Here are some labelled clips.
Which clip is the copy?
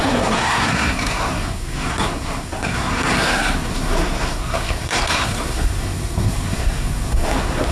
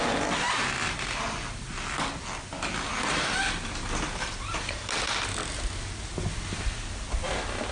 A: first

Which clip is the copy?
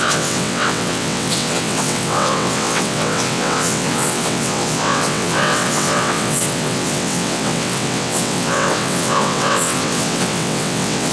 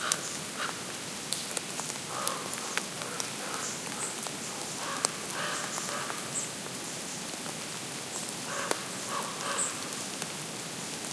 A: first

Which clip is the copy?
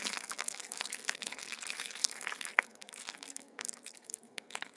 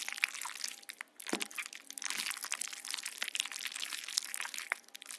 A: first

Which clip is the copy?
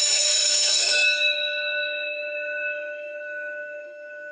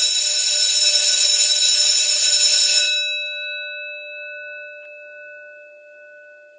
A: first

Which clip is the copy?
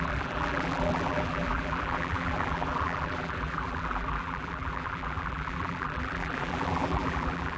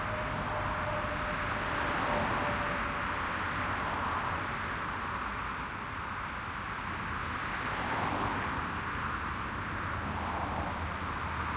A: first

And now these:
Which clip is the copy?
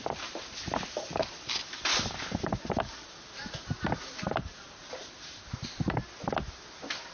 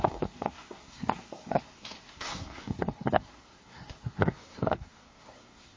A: second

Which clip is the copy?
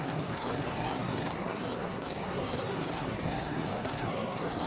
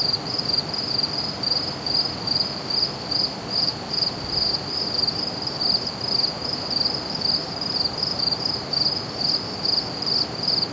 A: first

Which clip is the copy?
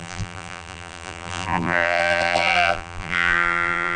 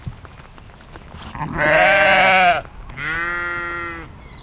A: first